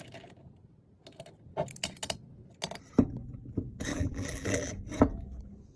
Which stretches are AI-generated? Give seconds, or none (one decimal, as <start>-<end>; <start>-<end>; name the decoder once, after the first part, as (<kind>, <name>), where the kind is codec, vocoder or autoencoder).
3.9-4.7 (vocoder, BigVGAN v2)